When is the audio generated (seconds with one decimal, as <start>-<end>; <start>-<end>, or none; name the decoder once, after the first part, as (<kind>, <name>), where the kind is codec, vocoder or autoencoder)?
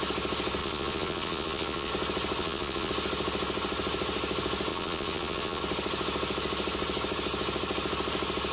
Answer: 0.6-1.9 (vocoder, Vocos); 2.4-2.9; 4.7-5.6